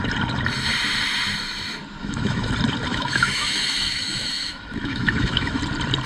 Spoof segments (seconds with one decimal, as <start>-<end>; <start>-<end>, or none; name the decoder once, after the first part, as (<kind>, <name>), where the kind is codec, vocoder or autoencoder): 2.0-2.5 (autoencoder, DAC-VAE); 2.9-5.6